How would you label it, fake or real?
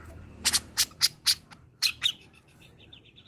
fake